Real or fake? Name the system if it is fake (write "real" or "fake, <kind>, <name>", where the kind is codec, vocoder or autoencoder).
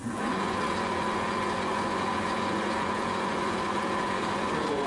fake, vocoder, Vocos